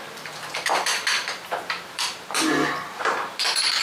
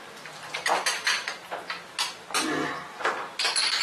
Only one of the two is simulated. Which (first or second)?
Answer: first